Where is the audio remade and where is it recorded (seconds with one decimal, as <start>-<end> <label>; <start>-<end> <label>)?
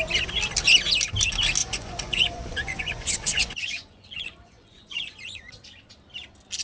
0.0-1.6 recorded; 1.6-5.5 remade; 5.5-6.6 recorded